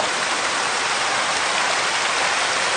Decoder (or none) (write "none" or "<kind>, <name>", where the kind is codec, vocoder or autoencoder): none